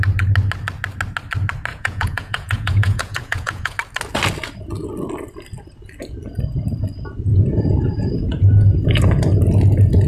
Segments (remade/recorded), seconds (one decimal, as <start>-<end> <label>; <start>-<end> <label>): 0.0-1.7 recorded; 1.7-3.8 remade; 3.8-7.3 recorded; 7.3-9.0 remade; 9.0-10.1 recorded